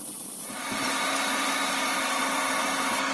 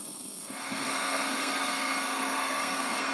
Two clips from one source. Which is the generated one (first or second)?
second